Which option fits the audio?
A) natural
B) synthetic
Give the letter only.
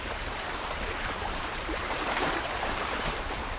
B